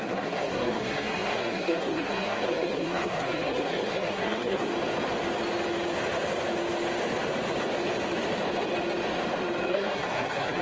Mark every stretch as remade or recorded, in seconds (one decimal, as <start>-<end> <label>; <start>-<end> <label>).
0.0-4.7 remade; 4.7-9.7 recorded; 9.7-10.6 remade